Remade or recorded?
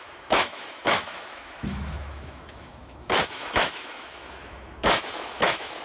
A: remade